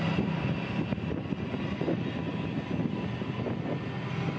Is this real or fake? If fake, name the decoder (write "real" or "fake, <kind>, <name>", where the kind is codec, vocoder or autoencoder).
real